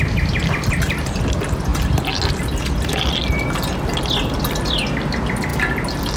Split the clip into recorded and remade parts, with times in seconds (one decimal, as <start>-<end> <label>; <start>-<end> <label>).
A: 0.0-6.2 recorded